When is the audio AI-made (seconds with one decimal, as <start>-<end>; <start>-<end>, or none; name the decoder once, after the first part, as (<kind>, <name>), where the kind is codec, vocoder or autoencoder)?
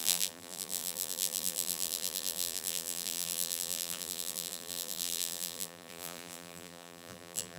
0.0-7.6 (vocoder, BigVGAN v2)